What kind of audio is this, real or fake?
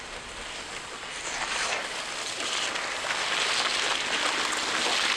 real